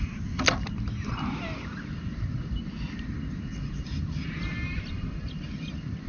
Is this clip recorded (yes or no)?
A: yes